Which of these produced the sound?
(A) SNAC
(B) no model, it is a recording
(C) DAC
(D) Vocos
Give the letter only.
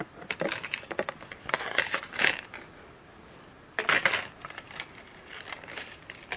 B